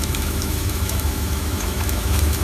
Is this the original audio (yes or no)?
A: no